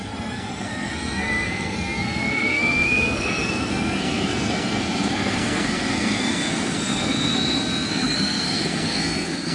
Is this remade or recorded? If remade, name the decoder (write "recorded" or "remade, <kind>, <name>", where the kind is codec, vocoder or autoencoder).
remade, codec, SNAC